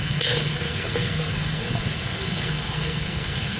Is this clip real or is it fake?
fake